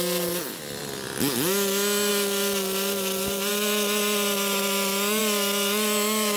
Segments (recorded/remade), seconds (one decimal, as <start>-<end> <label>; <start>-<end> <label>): 0.0-6.4 recorded